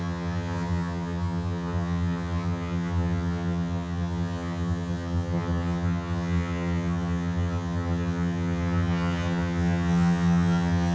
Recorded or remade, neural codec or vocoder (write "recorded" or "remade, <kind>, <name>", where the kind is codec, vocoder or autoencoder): remade, vocoder, HiFi-GAN